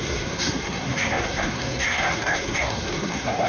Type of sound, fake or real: fake